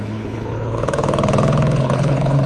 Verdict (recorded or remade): remade